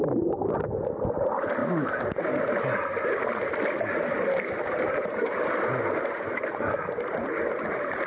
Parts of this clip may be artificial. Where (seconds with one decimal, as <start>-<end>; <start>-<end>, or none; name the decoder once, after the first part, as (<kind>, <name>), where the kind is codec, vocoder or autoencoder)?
none